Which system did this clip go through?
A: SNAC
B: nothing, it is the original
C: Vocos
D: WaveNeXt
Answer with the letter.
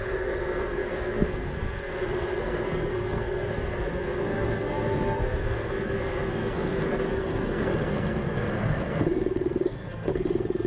A